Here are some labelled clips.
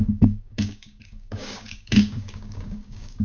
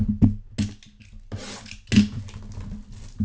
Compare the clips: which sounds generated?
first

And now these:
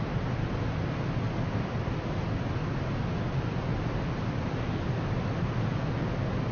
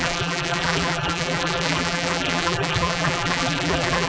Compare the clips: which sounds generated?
second